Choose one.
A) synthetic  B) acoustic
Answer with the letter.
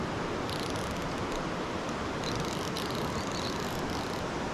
B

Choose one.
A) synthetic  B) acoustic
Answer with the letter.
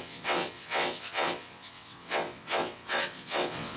A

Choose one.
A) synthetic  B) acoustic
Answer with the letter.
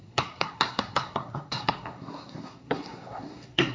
A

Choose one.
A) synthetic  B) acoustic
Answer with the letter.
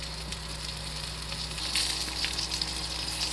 B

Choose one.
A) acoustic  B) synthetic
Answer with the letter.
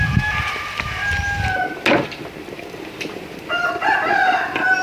A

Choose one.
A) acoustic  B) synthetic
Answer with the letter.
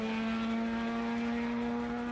A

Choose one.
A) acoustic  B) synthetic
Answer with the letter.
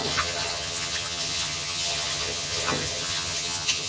B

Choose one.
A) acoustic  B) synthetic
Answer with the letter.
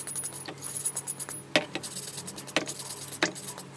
A